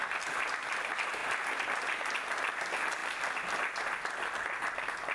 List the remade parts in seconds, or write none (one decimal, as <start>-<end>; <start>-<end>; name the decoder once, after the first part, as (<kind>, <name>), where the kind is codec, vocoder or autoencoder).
none